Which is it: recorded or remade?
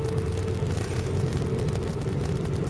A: recorded